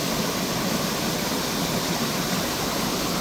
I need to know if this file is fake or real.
real